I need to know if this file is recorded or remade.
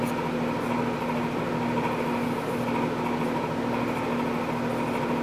recorded